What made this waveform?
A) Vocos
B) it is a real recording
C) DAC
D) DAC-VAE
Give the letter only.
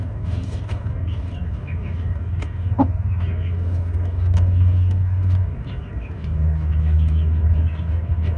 C